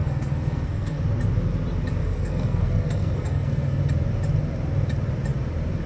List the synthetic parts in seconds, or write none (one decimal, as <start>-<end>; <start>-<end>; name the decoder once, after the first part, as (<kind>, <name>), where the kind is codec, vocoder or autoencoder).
0.0-1.0 (codec, SNAC); 2.0-3.8